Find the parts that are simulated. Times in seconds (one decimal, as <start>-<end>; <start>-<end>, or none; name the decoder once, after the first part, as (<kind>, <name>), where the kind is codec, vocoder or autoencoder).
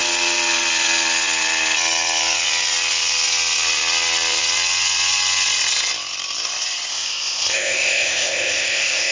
6.9-9.1 (codec, ZipCodec)